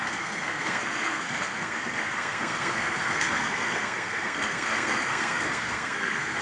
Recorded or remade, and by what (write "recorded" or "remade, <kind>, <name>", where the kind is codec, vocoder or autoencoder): remade, codec, SNAC